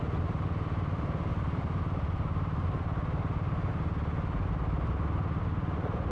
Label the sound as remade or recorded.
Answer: recorded